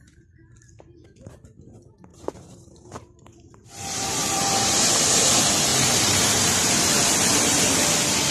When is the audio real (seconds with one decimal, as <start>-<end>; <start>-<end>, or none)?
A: 0.0-2.1; 4.9-5.7; 7.1-8.3